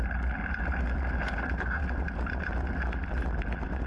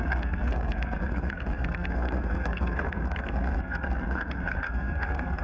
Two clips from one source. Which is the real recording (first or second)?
first